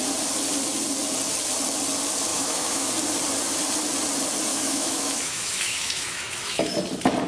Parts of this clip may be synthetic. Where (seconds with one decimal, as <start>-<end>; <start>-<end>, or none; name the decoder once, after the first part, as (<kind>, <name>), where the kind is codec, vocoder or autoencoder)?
2.3-2.9 (autoencoder, DAC-VAE); 4.5-6.7